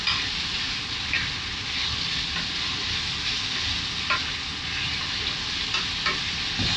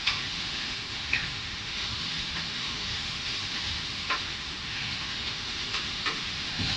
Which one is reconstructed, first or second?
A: second